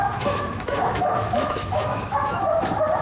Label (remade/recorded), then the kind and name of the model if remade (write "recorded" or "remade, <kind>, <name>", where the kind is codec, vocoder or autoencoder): remade, autoencoder, DAC-VAE